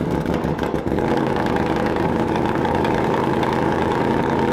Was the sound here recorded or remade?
remade